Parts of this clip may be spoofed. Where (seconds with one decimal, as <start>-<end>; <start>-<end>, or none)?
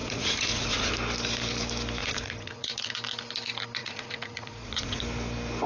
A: 0.0-0.9; 2.0-2.9; 3.8-5.0